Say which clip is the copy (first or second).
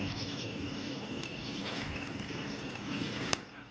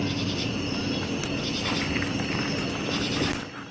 first